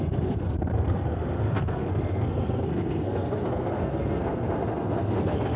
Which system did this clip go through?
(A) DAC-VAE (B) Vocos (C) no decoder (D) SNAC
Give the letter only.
D